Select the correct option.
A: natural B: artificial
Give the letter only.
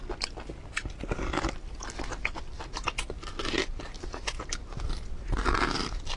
A